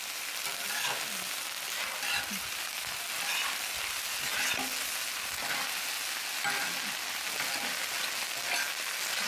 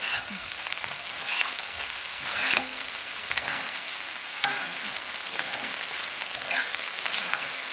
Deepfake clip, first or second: second